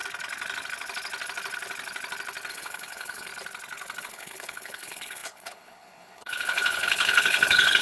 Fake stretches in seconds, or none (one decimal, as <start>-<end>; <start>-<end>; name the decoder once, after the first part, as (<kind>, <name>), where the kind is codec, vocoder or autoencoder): 2.5-3.3 (codec, HILCodec); 4.0-7.8